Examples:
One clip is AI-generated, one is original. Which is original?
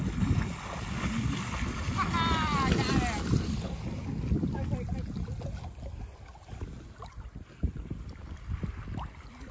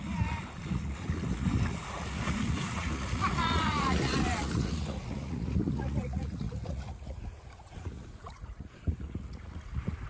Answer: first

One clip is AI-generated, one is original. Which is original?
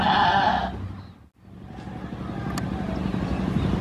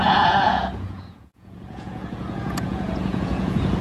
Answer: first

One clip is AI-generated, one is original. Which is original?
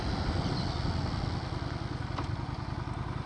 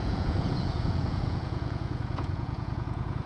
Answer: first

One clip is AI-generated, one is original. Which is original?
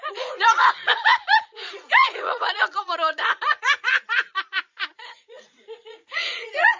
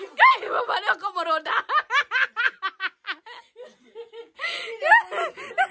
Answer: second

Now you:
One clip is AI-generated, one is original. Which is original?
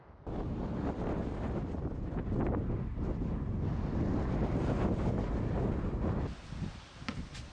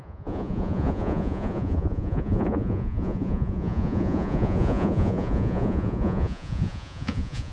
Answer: first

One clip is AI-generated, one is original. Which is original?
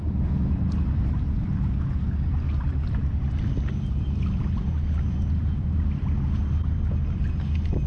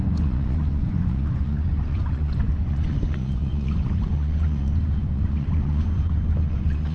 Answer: first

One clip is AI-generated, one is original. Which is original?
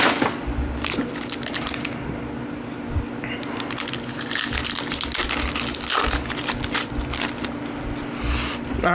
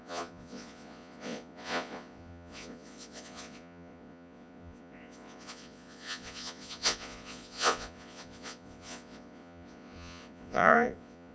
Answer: first